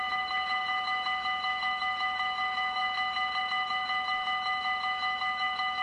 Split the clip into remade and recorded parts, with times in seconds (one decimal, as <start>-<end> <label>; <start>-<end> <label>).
0.0-2.8 remade; 2.8-3.4 recorded; 3.4-5.8 remade